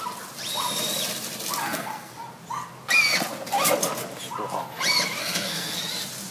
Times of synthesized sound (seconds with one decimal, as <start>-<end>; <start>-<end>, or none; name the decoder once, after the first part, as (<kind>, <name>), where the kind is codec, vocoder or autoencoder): 1.6-2.1 (codec, SNAC); 5.2-5.8